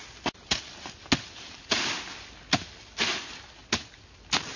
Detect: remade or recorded recorded